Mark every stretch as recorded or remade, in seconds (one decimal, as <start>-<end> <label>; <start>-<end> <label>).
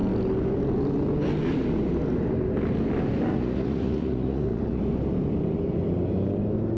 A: 0.0-3.3 recorded; 3.3-4.8 remade; 4.8-6.8 recorded